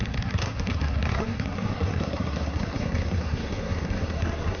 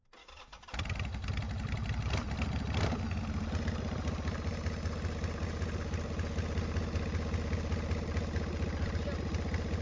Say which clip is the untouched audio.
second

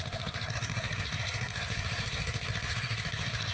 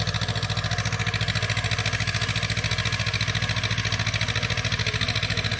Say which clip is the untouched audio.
second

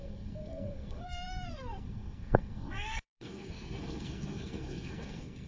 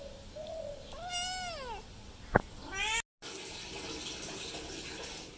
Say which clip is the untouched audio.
second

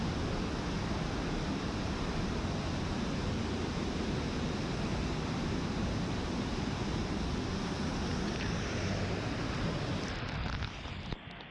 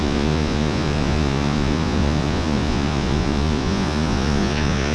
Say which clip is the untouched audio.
first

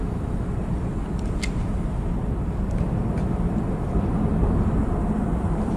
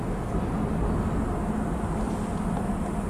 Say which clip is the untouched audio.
second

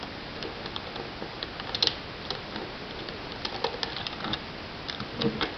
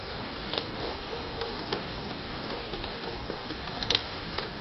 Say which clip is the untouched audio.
first